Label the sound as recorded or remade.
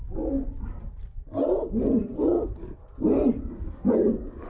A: recorded